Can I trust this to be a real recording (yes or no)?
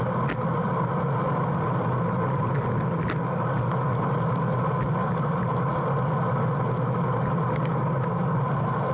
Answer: yes